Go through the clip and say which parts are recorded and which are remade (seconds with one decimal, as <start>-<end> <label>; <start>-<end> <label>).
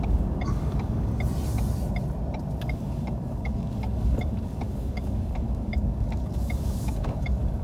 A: 0.0-1.1 remade; 1.1-2.6 recorded; 2.6-7.6 remade